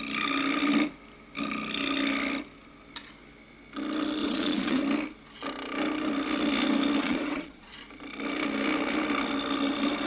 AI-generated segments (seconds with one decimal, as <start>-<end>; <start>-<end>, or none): 4.2-4.8; 7.0-7.7